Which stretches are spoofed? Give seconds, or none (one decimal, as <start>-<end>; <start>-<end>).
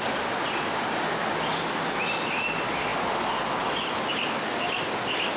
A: none